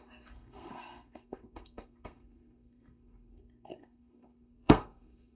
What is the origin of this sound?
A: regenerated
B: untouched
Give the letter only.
A